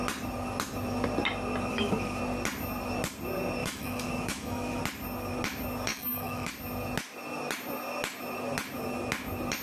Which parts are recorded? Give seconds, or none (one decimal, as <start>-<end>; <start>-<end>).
0.0-1.7; 2.2-3.6; 4.8-5.9; 6.5-9.6